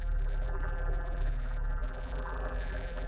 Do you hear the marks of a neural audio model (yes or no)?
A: yes